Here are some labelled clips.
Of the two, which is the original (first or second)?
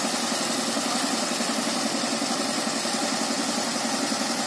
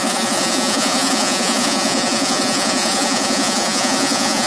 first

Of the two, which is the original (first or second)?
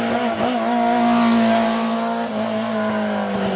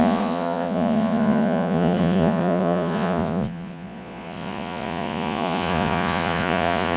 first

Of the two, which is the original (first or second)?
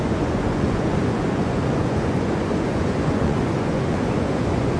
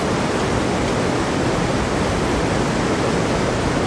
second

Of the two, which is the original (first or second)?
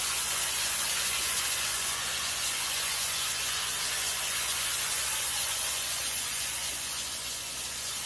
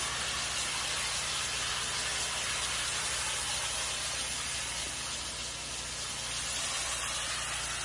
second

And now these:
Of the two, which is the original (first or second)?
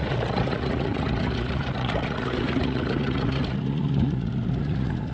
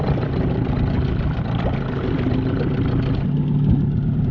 second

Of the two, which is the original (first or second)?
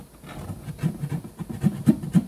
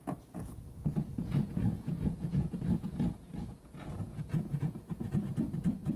first